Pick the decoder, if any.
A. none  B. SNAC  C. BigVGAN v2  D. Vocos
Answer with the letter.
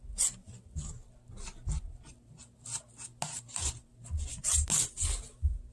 A